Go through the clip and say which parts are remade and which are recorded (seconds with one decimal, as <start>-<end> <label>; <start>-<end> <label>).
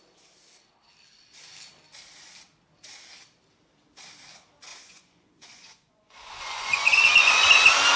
0.0-4.7 recorded; 4.7-7.5 remade; 7.5-8.0 recorded